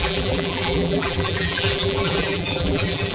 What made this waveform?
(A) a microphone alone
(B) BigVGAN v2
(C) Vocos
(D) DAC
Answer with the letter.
B